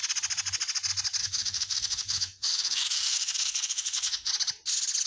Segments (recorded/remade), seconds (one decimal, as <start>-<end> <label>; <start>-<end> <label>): 0.0-1.2 recorded; 1.2-4.3 remade; 4.3-5.1 recorded